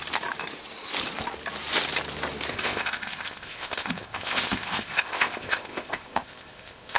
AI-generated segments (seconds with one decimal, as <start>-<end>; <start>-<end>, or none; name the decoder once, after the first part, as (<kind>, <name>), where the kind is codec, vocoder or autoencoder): 2.5-7.0 (codec, ZipCodec)